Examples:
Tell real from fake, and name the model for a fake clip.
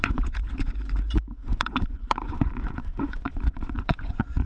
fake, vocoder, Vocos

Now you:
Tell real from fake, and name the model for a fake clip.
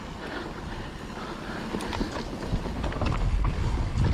real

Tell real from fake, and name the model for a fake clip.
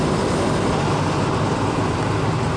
real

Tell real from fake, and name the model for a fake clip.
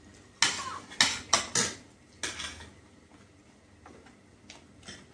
real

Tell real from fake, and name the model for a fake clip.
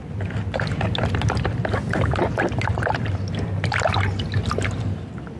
real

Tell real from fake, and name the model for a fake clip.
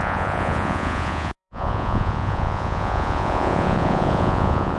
fake, vocoder, Vocos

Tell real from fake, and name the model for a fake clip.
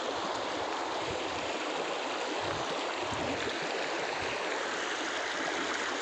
real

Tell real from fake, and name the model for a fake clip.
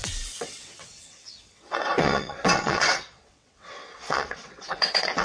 fake, vocoder, WaveNeXt